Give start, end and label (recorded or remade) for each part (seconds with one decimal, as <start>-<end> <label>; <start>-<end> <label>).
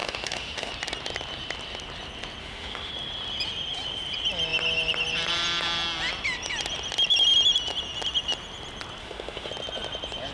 0.0-0.7 remade; 0.7-2.4 recorded; 2.4-2.9 remade; 2.9-9.0 recorded; 9.0-9.5 remade; 9.5-10.3 recorded